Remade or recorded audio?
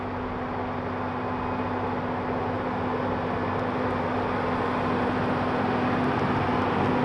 recorded